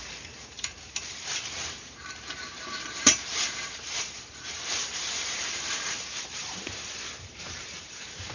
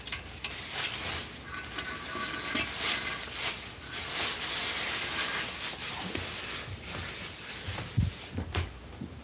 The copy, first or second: first